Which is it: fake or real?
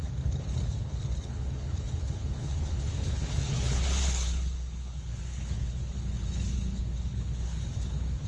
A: fake